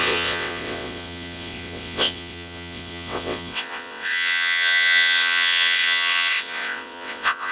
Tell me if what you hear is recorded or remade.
remade